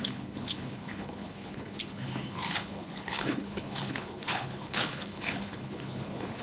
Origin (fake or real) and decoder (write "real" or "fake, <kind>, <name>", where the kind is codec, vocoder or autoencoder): fake, codec, HILCodec